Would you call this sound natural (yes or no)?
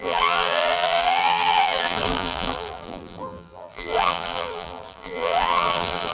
no